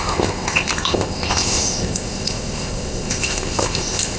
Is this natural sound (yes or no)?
no